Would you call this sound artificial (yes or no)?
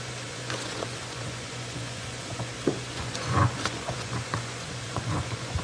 yes